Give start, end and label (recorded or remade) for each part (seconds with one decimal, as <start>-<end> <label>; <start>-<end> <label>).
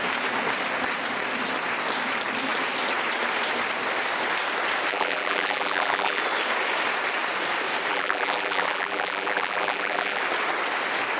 0.0-4.9 recorded; 4.9-6.2 remade; 6.2-7.9 recorded; 7.9-10.2 remade; 10.2-11.2 recorded